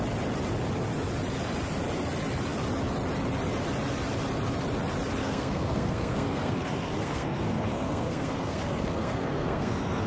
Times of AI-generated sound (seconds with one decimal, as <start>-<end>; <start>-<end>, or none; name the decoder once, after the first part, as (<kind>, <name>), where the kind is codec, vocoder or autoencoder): 5.2-10.1 (codec, SNAC)